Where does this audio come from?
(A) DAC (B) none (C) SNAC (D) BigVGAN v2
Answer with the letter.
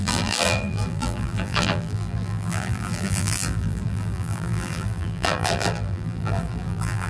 D